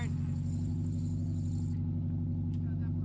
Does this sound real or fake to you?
real